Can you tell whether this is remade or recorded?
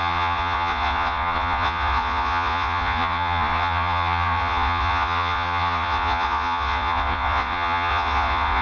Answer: remade